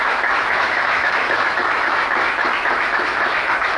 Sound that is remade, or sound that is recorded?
remade